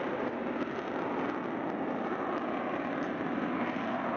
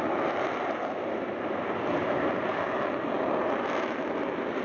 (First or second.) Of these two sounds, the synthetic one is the second